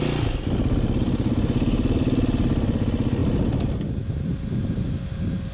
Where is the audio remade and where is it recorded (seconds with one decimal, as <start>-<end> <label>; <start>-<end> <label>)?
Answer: 0.0-5.5 recorded